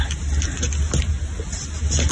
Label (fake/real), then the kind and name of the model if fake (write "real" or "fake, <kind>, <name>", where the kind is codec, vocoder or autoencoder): real